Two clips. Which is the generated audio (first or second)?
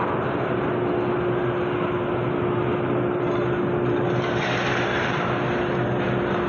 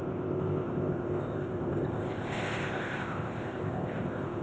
second